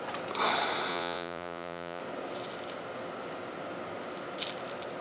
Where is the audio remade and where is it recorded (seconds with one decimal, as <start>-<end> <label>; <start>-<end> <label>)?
0.0-0.9 recorded; 0.9-2.0 remade; 2.0-5.0 recorded